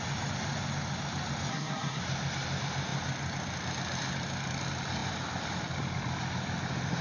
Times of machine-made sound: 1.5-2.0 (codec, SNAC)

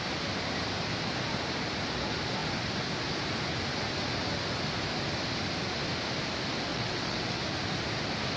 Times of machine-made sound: 6.7-7.4 (vocoder, WaveNeXt)

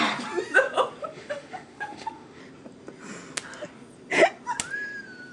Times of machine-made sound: 1.0-2.4 (autoencoder, DAC-VAE)

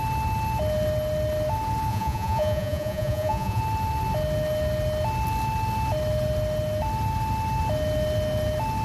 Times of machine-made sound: 1.9-3.6 (vocoder, Vocos)